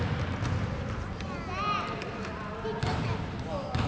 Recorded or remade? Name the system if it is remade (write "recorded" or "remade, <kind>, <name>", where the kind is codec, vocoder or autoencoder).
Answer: recorded